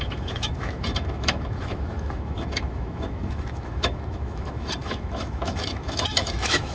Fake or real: fake